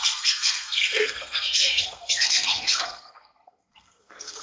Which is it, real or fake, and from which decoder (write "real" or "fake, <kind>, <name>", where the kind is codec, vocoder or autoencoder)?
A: fake, codec, SNAC